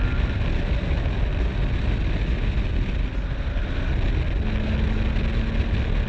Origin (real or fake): real